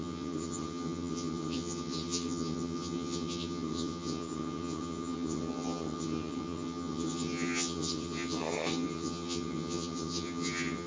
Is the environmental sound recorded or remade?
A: remade